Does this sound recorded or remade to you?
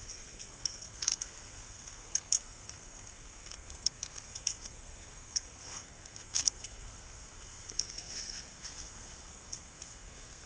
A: remade